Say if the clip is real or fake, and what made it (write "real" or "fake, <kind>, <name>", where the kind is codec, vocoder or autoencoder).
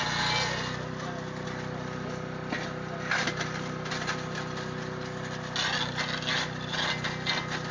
real